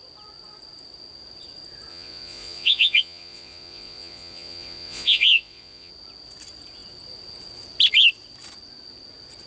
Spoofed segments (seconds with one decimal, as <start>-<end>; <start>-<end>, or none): 1.9-5.9

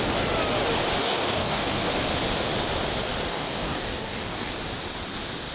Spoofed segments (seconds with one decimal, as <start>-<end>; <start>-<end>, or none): 1.0-1.9; 3.3-4.5

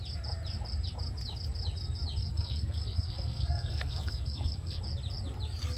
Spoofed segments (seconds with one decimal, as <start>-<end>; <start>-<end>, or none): 2.2-4.8